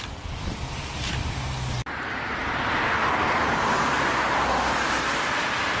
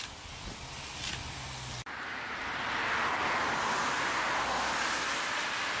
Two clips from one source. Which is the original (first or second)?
second